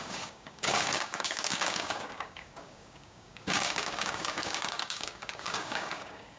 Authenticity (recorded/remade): remade